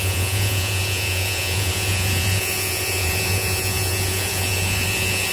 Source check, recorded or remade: remade